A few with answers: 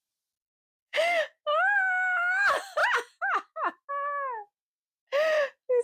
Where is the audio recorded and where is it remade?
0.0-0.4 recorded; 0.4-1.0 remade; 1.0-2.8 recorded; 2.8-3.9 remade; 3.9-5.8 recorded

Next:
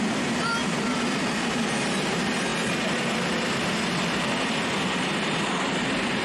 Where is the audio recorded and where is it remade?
0.0-6.2 recorded

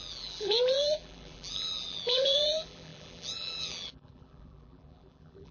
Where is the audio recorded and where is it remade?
0.0-5.5 remade